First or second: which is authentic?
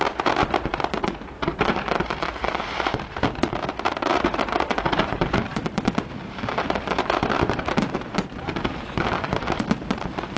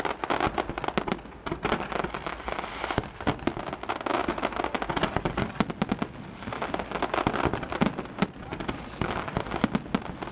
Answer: second